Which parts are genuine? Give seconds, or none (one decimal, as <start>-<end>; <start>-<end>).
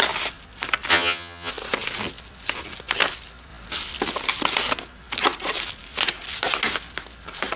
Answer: 0.0-0.9; 1.5-7.6